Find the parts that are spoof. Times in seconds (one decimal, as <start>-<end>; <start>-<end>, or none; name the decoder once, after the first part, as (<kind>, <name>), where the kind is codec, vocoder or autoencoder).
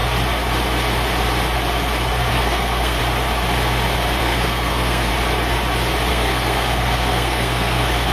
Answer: 2.3-3.0 (codec, SNAC); 4.2-5.1; 6.1-8.1